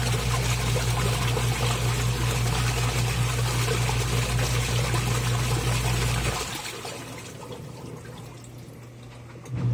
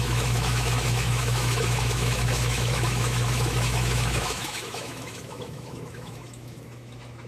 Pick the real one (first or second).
first